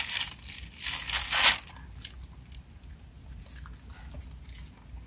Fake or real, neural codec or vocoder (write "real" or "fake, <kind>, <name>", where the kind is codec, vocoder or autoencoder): real